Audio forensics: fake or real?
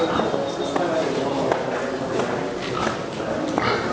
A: real